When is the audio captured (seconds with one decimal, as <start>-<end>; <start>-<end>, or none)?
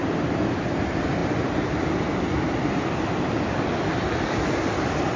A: 0.0-5.2